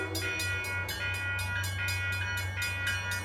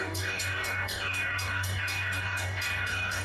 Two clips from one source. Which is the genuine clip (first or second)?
first